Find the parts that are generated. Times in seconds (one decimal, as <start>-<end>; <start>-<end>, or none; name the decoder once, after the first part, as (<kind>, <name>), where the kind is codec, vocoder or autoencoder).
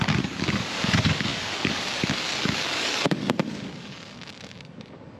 0.0-5.2 (codec, DAC)